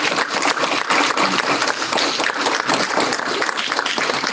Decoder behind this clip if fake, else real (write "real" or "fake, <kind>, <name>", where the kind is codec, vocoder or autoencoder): real